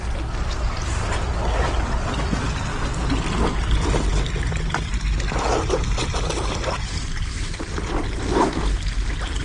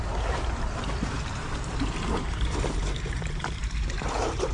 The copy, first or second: second